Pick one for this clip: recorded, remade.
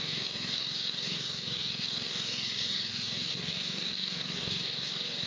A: remade